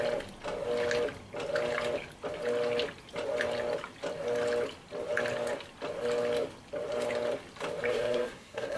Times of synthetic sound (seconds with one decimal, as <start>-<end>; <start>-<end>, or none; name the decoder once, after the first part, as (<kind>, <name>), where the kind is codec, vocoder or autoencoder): 7.9-8.8 (codec, SNAC)